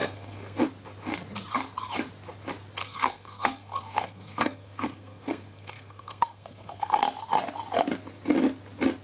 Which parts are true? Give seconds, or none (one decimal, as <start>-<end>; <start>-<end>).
0.6-2.8; 7.0-9.0